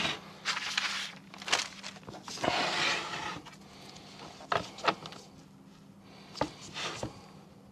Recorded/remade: recorded